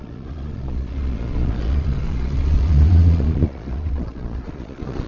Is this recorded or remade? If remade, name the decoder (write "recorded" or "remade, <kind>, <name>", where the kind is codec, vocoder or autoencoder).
remade, vocoder, Vocos